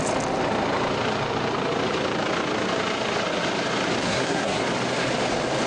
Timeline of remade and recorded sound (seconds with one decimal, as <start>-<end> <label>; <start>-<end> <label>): 0.0-4.0 recorded; 4.0-4.6 remade; 4.6-5.7 recorded